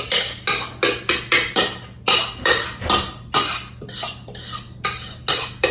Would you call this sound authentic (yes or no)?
yes